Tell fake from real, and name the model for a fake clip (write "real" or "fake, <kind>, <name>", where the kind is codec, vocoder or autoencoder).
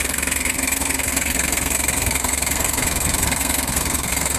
fake, codec, SNAC